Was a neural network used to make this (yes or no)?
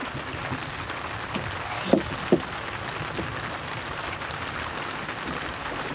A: no